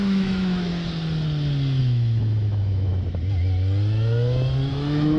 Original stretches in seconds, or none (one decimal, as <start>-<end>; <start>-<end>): 0.7-1.8; 2.9-4.7

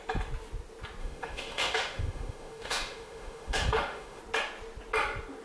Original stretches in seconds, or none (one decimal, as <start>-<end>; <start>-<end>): 0.0-1.0; 4.2-5.4

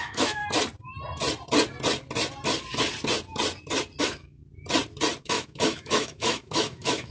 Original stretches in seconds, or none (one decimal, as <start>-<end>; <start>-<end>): 0.4-4.0; 4.4-5.2